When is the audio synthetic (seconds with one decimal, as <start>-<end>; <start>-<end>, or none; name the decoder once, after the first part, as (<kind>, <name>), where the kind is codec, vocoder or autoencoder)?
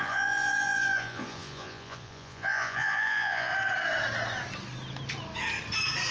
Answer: 0.0-3.5 (vocoder, Vocos)